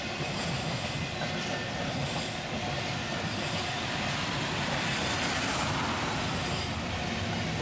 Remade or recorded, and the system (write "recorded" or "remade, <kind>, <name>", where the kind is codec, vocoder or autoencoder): recorded